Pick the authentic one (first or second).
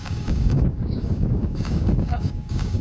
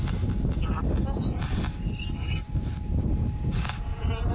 second